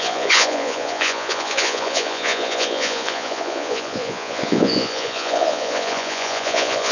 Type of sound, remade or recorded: remade